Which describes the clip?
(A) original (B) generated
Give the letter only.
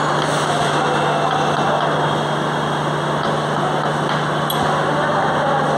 A